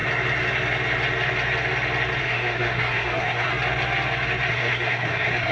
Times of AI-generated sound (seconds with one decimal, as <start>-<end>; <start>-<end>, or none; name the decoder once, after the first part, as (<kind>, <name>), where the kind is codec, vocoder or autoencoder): 2.2-3.5 (codec, SNAC); 4.5-5.5